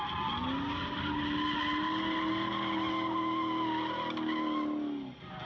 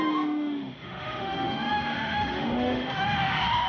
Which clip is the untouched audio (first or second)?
first